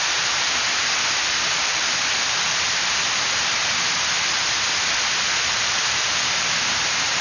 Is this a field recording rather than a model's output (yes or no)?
yes